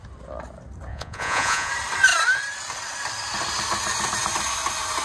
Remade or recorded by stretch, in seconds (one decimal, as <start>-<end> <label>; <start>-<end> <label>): 0.0-0.9 recorded; 0.9-1.7 remade; 1.7-5.0 recorded